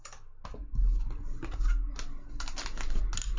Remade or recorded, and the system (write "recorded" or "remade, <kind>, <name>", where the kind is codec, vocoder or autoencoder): recorded